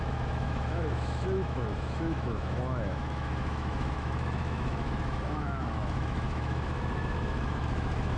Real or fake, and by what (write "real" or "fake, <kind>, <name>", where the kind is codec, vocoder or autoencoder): fake, autoencoder, DAC-VAE